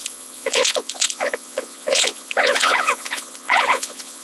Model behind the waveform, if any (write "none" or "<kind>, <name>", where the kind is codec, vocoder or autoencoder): vocoder, Vocos